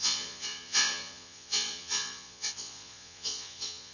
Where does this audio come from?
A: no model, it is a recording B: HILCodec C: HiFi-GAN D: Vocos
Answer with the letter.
D